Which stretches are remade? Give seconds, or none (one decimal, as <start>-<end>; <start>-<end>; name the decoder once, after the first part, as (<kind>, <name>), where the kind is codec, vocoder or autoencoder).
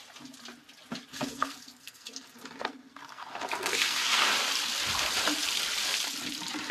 1.1-4.3 (codec, SNAC)